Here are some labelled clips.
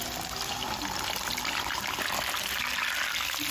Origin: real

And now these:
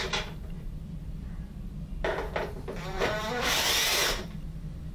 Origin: fake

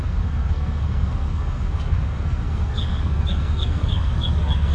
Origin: fake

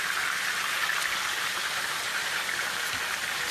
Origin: real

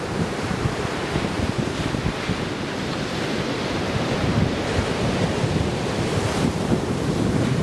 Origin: fake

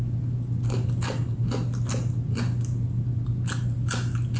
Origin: real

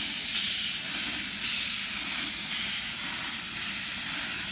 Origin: real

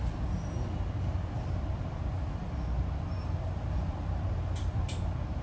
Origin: real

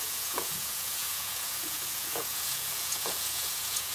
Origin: fake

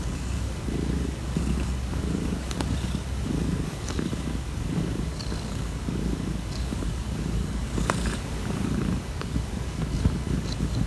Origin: fake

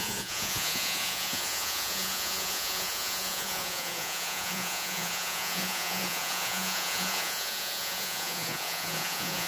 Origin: fake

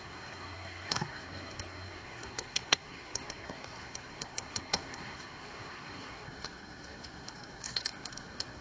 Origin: fake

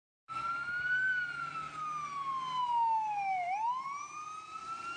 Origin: real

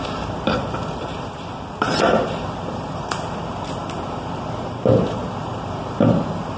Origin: fake